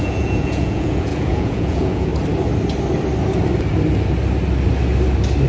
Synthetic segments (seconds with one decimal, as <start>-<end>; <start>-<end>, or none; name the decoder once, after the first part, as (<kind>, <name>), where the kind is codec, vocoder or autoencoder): 0.0-2.1 (vocoder, Vocos)

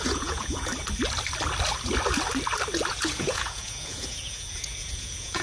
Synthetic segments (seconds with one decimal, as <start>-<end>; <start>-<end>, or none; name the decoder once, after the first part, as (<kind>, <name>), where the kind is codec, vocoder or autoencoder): 0.0-0.7 (vocoder, Vocos); 2.9-5.4

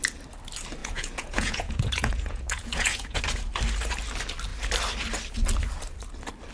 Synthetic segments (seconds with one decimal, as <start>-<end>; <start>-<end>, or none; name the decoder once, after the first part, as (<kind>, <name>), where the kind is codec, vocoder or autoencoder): 0.8-3.2 (vocoder, Vocos)